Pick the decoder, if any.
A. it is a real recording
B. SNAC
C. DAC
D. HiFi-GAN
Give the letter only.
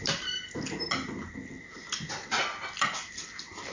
A